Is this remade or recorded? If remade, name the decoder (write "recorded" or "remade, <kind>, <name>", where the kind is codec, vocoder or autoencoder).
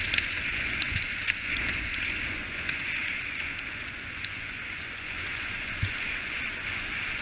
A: remade, vocoder, Vocos